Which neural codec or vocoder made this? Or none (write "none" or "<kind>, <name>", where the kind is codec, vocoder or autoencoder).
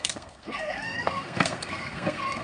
codec, SNAC